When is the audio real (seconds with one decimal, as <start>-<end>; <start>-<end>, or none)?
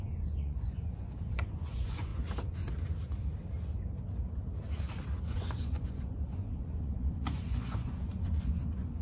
2.1-5.2